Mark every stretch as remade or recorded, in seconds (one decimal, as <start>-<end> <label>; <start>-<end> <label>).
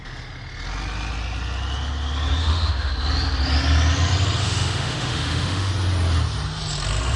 0.0-2.4 recorded; 2.4-2.9 remade; 2.9-4.4 recorded; 4.4-5.7 remade; 5.7-7.2 recorded